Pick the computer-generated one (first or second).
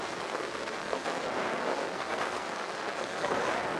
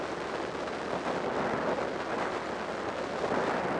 first